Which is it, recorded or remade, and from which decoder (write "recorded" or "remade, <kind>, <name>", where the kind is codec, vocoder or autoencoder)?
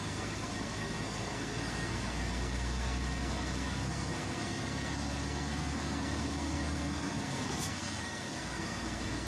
remade, codec, SNAC